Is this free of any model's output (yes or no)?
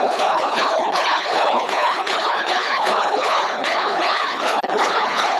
no